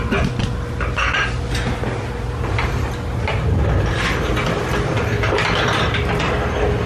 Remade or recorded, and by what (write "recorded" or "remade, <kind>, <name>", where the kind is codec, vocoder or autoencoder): recorded